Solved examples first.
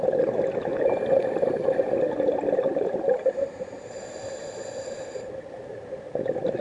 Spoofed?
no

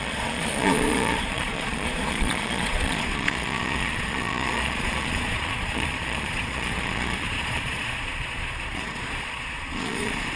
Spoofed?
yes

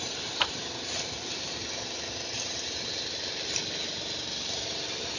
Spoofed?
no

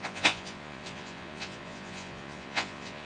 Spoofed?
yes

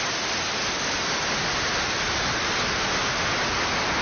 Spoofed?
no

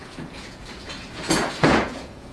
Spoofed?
yes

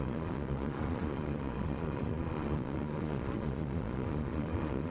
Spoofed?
yes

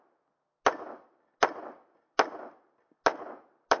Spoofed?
no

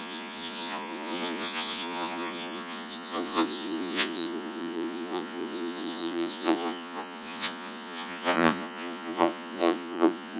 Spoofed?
yes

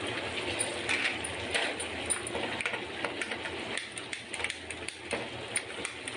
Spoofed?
no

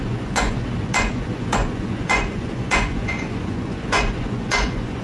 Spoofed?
yes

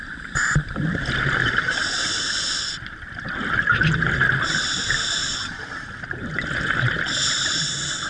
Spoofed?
no